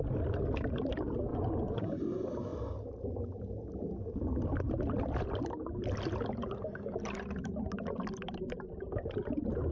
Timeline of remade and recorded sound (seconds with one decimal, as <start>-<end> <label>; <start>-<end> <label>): 0.0-1.3 recorded; 1.3-2.0 remade; 2.0-9.7 recorded